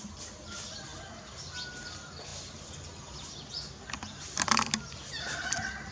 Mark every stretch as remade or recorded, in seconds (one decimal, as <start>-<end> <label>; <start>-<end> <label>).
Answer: 0.0-5.9 recorded